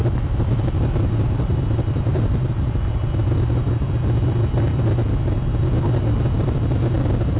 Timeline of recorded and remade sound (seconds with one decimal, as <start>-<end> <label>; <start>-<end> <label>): 0.0-3.1 remade; 3.1-7.4 recorded